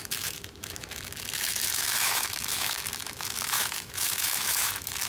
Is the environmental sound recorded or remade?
remade